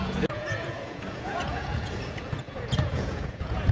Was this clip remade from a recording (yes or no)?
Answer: yes